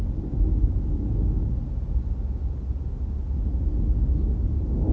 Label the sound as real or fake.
real